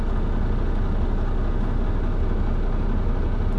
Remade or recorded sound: recorded